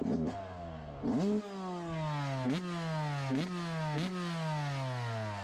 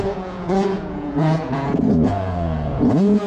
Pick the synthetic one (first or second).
second